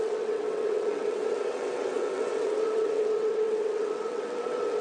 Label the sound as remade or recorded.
remade